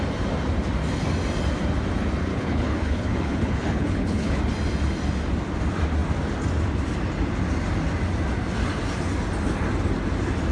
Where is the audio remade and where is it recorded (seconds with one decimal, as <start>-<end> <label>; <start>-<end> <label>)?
0.0-2.3 recorded; 2.3-4.4 remade; 4.4-10.5 recorded